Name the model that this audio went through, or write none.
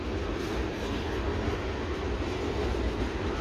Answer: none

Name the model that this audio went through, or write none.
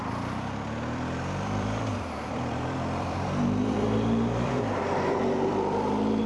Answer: vocoder, BigVGAN v2